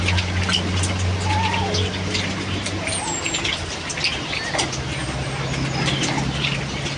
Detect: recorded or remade recorded